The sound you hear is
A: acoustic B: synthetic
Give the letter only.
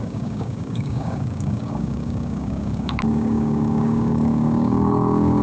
B